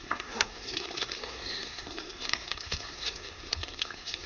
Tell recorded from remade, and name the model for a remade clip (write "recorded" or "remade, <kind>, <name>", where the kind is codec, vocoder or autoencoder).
remade, codec, SNAC